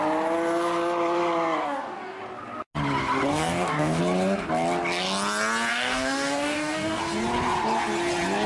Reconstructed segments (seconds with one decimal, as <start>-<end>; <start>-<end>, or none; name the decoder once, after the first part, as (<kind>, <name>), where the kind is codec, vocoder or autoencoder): 1.6-2.2 (codec, DAC); 3.3-4.0; 5.7-7.0